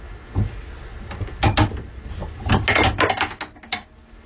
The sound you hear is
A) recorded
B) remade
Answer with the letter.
A